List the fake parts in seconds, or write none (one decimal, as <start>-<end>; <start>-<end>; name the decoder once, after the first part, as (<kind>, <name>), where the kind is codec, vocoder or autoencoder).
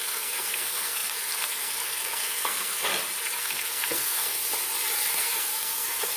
0.0-2.9 (codec, SNAC); 3.4-4.4; 5.1-6.2